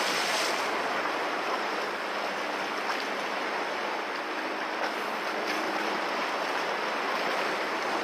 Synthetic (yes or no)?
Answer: yes